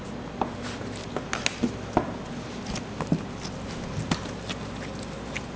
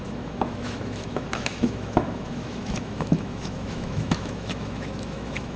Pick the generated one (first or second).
second